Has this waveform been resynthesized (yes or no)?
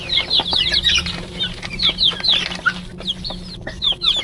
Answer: no